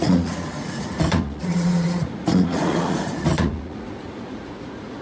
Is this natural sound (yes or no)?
no